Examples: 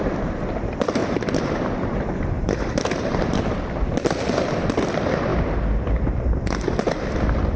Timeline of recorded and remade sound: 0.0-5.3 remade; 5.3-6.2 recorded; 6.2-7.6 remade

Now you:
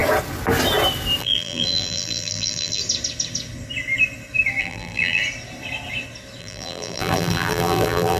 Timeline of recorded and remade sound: 0.0-1.2 recorded; 1.2-2.8 remade; 2.8-4.6 recorded; 4.6-5.2 remade; 5.2-6.4 recorded; 6.4-8.2 remade

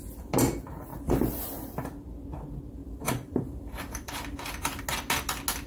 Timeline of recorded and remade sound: 0.0-2.8 recorded; 2.8-4.8 remade; 4.8-5.7 recorded

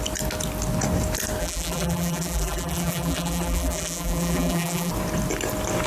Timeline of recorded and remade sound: 0.0-1.4 recorded; 1.4-4.9 remade; 4.9-5.9 recorded